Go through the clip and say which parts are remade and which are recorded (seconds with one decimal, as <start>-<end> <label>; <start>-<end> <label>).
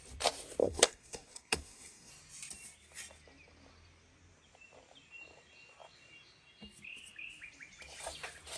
0.0-0.6 recorded; 0.6-2.1 remade; 2.1-8.6 recorded